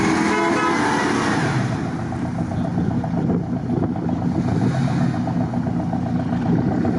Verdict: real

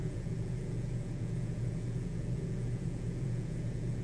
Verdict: fake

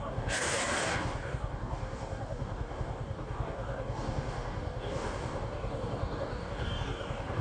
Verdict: fake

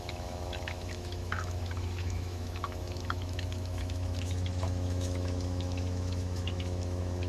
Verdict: fake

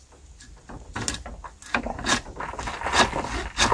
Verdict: real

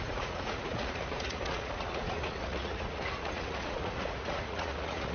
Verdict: fake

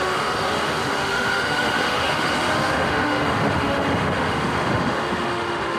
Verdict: fake